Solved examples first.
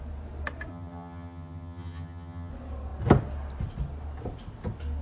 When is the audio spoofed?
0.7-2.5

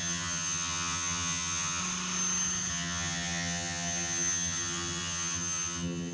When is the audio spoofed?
0.0-1.8; 2.7-6.1

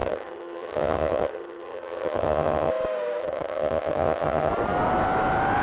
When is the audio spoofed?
0.0-2.7; 3.2-4.5